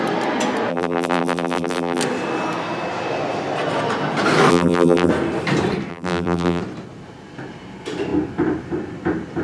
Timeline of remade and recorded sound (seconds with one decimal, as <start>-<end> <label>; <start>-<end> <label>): 0.0-0.7 recorded; 0.7-2.0 remade; 2.0-4.5 recorded; 4.5-5.1 remade; 5.1-5.9 recorded; 5.9-6.6 remade; 6.6-9.4 recorded